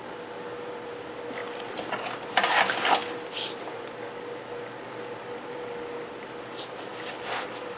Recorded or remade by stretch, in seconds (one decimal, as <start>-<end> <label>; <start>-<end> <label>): 0.0-1.4 remade; 1.4-2.2 recorded; 2.2-3.0 remade; 3.0-3.6 recorded; 3.6-7.8 remade